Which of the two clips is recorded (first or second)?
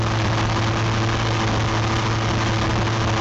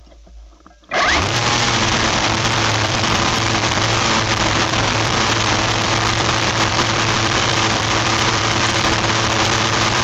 first